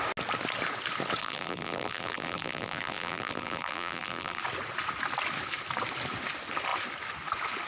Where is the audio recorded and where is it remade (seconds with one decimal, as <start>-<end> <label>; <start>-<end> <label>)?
0.0-1.2 recorded; 1.2-4.4 remade; 4.4-7.7 recorded